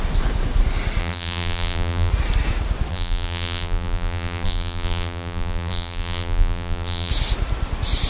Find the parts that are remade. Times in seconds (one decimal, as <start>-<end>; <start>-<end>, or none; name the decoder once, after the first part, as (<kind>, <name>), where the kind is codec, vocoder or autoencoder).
1.0-2.1 (vocoder, BigVGAN v2); 2.9-7.1

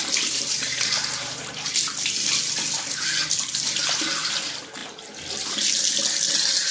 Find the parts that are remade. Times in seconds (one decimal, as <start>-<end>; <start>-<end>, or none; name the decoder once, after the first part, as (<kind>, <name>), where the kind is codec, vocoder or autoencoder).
none

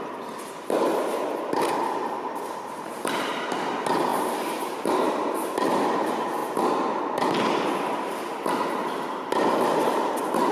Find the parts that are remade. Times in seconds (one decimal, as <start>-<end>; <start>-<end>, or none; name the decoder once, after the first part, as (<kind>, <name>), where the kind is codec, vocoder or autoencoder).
4.1-5.3 (vocoder, BigVGAN v2)

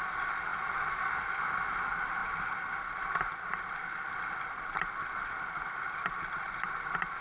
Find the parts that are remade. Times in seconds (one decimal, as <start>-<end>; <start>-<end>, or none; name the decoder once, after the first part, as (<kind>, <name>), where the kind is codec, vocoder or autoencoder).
none